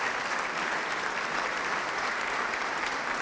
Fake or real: fake